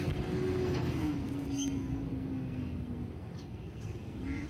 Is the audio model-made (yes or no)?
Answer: yes